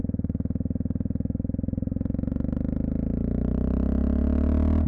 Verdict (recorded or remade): recorded